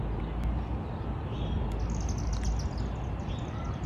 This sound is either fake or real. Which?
real